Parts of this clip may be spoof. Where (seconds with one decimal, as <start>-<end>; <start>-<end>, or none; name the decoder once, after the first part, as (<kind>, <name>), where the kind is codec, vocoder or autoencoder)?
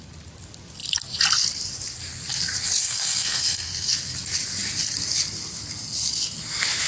2.8-3.9 (codec, SNAC)